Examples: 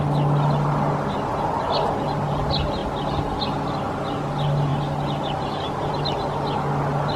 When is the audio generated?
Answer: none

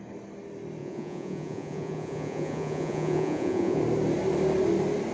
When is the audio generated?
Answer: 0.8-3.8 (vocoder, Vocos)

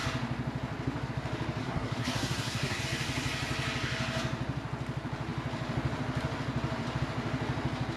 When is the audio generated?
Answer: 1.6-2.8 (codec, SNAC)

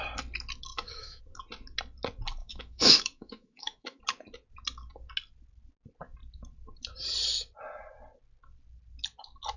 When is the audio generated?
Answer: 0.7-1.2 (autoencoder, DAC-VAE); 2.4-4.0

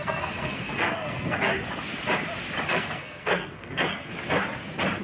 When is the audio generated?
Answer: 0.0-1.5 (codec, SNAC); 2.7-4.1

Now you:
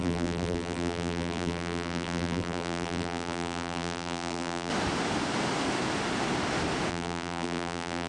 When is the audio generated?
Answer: 0.0-4.7 (vocoder, BigVGAN v2); 6.9-8.1